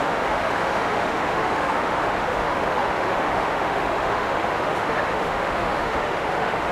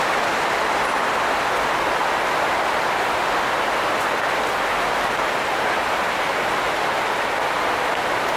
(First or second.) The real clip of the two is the second